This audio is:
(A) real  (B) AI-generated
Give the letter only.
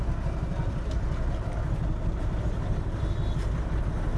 A